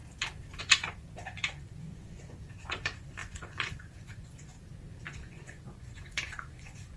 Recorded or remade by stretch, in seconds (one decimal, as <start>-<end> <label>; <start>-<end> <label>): 0.0-0.6 recorded; 0.6-4.5 remade; 4.5-5.0 recorded; 5.0-7.0 remade